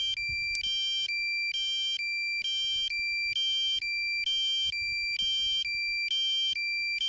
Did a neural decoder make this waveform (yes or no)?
no